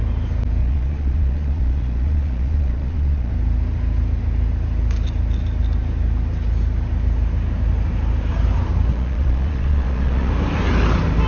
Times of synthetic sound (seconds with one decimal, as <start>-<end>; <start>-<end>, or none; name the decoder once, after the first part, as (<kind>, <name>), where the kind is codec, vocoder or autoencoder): 0.6-3.3 (vocoder, Vocos); 8.9-10.3